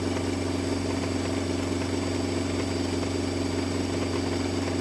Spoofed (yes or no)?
no